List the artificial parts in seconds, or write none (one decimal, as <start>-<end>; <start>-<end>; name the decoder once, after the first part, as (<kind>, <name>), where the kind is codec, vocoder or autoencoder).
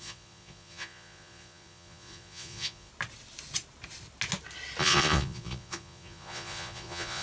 0.0-2.9 (vocoder, Vocos); 4.8-7.2